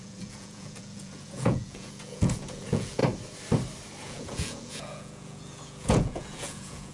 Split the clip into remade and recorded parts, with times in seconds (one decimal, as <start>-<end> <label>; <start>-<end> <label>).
0.0-3.0 remade; 3.0-4.0 recorded; 4.0-6.9 remade